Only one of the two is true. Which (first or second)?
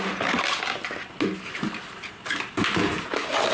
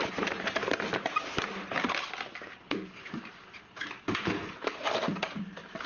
first